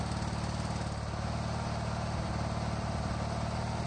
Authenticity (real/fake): real